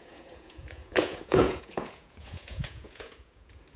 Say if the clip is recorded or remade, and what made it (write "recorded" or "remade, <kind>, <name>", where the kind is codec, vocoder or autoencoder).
remade, vocoder, Vocos